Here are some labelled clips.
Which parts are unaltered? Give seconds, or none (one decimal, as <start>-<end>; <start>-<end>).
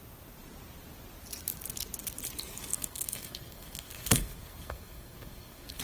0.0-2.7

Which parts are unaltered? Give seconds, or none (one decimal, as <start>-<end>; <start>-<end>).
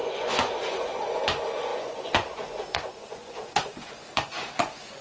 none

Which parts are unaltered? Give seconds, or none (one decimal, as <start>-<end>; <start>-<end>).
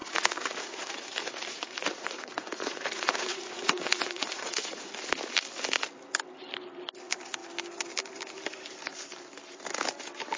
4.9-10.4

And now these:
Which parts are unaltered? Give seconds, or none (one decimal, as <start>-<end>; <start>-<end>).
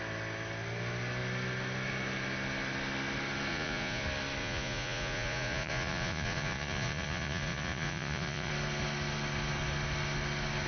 0.0-3.5; 4.0-4.4; 8.5-10.7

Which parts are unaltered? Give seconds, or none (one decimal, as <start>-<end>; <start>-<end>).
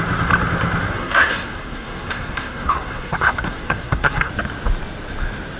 0.0-0.9; 4.3-5.6